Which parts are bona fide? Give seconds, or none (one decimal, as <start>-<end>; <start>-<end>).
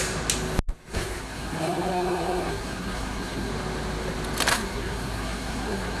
0.0-0.9; 3.5-4.5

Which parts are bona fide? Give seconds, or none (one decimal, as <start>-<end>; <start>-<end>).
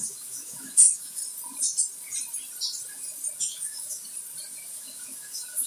1.2-3.4; 4.0-4.7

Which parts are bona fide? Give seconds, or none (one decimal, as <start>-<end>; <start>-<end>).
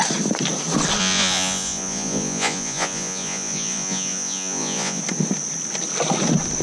0.0-1.0; 5.0-6.6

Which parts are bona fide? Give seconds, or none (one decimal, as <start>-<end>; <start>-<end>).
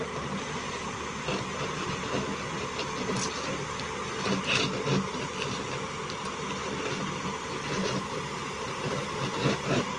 0.0-9.0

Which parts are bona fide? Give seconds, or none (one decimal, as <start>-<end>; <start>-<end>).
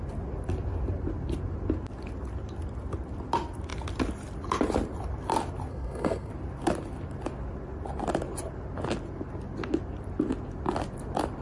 0.0-5.7; 6.3-11.4